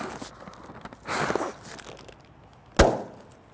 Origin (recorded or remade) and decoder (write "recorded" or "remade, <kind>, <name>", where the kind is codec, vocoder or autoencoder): recorded